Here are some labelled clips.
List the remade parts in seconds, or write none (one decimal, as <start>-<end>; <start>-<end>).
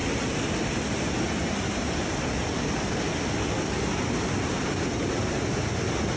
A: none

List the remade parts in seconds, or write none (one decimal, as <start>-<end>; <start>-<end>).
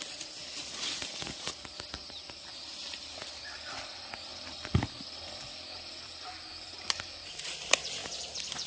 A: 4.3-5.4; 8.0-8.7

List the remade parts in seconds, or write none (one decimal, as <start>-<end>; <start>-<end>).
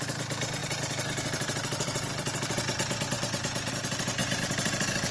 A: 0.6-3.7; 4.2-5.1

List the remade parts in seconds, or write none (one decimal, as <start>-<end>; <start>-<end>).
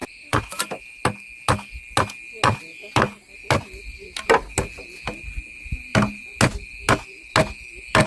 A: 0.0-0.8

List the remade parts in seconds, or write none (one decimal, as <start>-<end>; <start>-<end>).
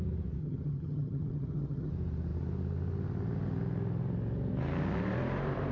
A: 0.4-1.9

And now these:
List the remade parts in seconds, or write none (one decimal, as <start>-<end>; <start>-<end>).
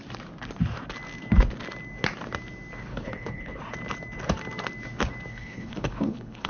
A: 2.9-3.6; 5.3-6.5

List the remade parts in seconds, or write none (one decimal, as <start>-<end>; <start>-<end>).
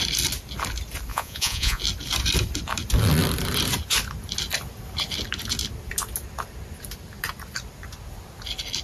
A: 1.1-1.8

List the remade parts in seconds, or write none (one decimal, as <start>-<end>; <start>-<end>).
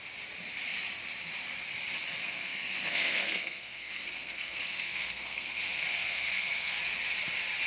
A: 2.2-6.8